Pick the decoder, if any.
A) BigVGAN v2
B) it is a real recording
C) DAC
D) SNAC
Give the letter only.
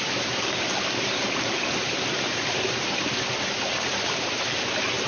B